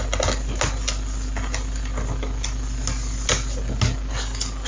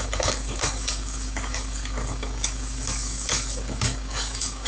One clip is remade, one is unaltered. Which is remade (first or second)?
second